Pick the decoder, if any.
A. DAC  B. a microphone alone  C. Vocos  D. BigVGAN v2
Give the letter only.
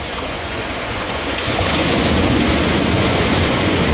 C